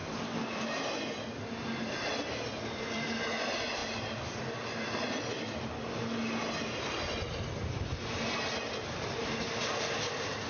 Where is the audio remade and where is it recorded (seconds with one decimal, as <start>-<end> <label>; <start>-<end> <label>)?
0.0-10.5 recorded